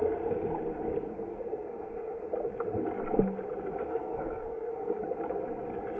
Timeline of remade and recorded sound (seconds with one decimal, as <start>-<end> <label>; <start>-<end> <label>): 0.0-1.3 recorded; 1.3-2.2 remade; 2.2-3.9 recorded; 3.9-5.0 remade; 5.0-6.0 recorded